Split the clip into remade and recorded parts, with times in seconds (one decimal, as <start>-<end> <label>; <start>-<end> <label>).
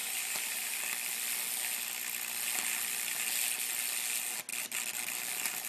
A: 0.0-0.8 remade; 0.8-5.7 recorded